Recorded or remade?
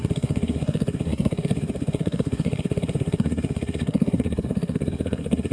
remade